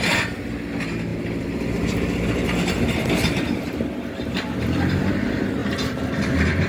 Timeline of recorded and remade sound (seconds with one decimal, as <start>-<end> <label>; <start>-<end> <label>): 0.0-1.1 recorded; 1.1-5.1 remade; 5.1-5.6 recorded; 5.6-6.7 remade